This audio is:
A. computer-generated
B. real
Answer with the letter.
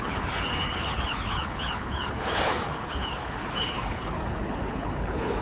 A